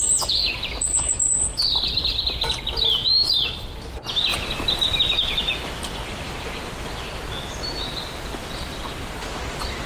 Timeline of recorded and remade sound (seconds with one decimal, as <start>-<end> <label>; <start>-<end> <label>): 0.0-9.9 recorded